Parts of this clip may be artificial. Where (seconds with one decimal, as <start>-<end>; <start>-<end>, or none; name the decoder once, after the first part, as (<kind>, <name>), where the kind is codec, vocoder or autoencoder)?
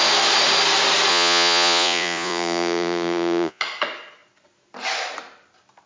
1.1-3.6 (vocoder, Vocos)